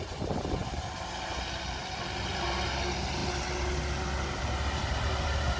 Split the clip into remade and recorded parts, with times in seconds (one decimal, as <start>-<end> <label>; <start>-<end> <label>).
0.0-5.6 recorded